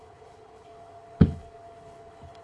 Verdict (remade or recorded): remade